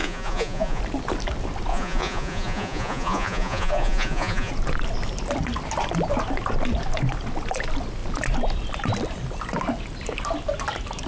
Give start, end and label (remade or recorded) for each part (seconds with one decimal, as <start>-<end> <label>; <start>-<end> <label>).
0.0-0.8 remade; 0.8-1.7 recorded; 1.7-4.5 remade; 4.5-11.1 recorded